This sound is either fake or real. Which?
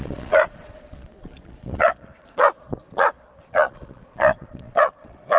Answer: fake